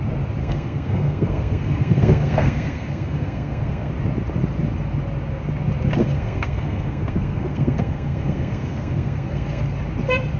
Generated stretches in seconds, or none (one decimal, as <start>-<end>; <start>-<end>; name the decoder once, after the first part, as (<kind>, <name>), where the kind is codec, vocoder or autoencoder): 0.4-3.9 (codec, SNAC); 6.0-9.6